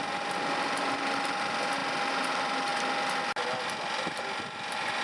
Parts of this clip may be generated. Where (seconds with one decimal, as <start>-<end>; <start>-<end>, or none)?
none